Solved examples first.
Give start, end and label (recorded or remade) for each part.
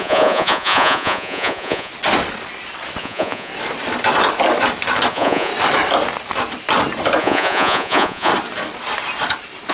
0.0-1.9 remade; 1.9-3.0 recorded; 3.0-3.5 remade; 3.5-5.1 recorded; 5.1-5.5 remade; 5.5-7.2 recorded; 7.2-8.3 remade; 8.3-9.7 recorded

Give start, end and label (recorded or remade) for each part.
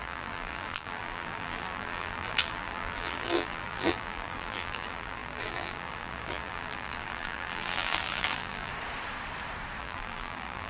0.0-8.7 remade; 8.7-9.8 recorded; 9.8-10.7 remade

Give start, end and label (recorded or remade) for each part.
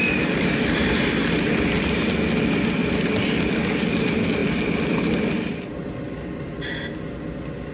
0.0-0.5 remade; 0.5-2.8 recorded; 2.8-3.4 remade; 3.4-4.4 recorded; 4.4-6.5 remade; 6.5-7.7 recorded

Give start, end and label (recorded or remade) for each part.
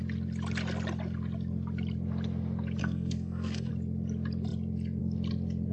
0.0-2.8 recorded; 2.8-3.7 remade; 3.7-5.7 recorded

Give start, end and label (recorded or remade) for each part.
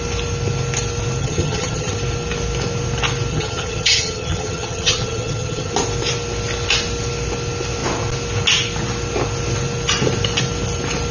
0.0-1.2 recorded; 1.2-1.9 remade; 1.9-3.3 recorded; 3.3-5.7 remade; 5.7-11.1 recorded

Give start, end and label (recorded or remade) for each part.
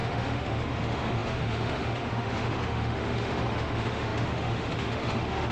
0.0-5.5 remade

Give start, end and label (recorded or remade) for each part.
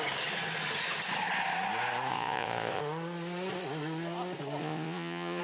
0.0-2.1 recorded; 2.1-2.8 remade; 2.8-4.6 recorded; 4.6-5.4 remade